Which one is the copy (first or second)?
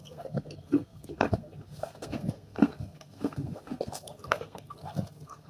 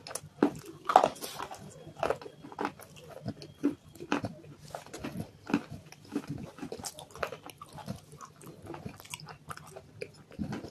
first